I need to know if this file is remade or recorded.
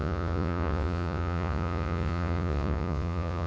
remade